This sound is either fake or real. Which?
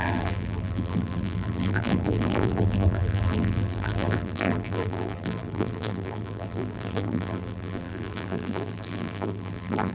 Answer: fake